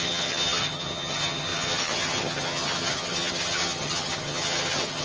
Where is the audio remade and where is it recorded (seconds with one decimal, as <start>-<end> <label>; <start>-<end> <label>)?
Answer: 0.0-5.0 remade

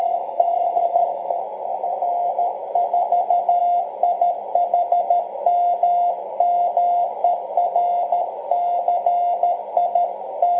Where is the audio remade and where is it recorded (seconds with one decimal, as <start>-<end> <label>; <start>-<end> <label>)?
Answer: 0.0-1.4 remade; 1.4-10.6 recorded

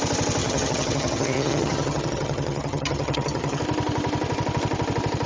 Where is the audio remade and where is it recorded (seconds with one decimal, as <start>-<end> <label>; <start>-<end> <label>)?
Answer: 0.0-0.4 recorded; 0.4-3.6 remade; 3.6-5.3 recorded

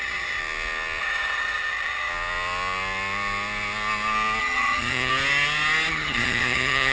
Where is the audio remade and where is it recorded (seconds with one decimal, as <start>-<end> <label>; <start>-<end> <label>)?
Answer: 0.0-0.4 remade; 0.4-1.0 recorded; 1.0-2.1 remade; 2.1-4.4 recorded; 4.4-5.1 remade; 5.1-5.9 recorded; 5.9-6.9 remade

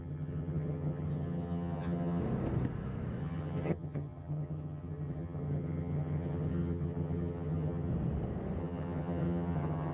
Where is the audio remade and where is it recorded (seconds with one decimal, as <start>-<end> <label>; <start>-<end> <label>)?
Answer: 0.0-2.2 remade; 2.2-3.2 recorded; 3.2-7.9 remade; 7.9-8.6 recorded; 8.6-9.9 remade

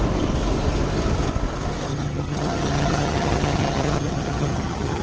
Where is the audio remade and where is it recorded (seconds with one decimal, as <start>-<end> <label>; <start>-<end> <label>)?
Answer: 0.0-1.9 recorded; 1.9-5.0 remade